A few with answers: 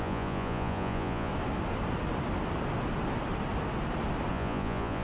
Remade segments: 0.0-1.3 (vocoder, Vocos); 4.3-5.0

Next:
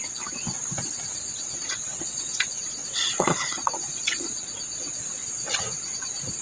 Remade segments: 1.3-5.1 (vocoder, Vocos)

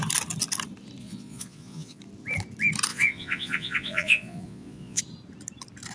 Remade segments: 1.0-2.0 (vocoder, Vocos); 2.9-5.0

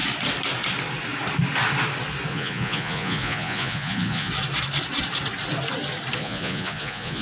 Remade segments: 2.3-4.3 (vocoder, Vocos); 6.2-7.2

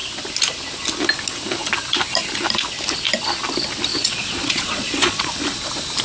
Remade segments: 3.9-5.3 (vocoder, Vocos)

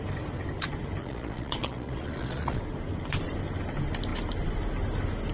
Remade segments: 1.0-2.6 (vocoder, Vocos)

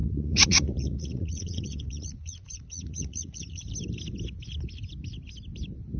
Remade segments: 0.0-3.6 (vocoder, Vocos)